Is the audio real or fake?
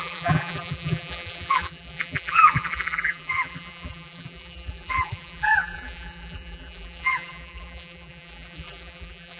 fake